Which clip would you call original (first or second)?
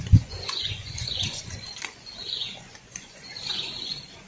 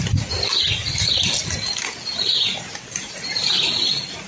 second